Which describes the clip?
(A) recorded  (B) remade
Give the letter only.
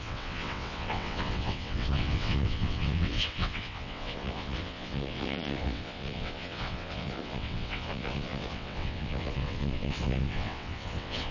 B